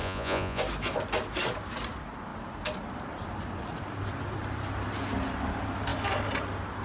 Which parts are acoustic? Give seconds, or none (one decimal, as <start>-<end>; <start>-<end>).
0.6-6.8